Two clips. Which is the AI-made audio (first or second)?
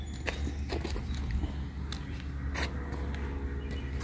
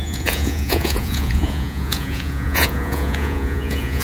second